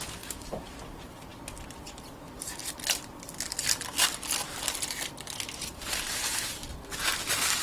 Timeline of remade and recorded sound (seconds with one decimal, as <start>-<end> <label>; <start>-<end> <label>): 0.0-1.3 remade; 1.3-2.2 recorded; 2.2-2.6 remade; 2.6-7.6 recorded